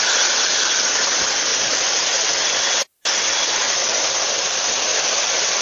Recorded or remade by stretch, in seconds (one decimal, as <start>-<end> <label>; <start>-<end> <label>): 0.0-4.9 recorded; 4.9-5.6 remade